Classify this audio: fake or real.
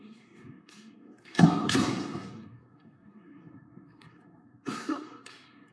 fake